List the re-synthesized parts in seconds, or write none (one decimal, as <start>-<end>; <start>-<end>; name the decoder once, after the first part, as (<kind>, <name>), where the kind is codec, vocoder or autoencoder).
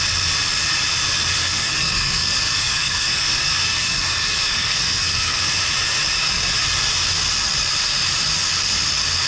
1.4-5.5 (codec, SNAC)